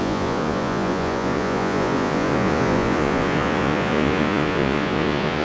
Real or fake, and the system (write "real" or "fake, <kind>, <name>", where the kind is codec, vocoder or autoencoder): fake, vocoder, Vocos